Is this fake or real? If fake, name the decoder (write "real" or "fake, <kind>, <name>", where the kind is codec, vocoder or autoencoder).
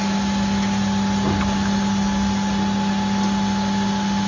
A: real